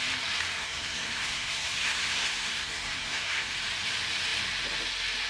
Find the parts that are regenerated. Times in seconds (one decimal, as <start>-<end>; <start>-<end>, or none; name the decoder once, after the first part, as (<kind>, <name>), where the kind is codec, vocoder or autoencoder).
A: 0.6-3.5 (codec, SNAC)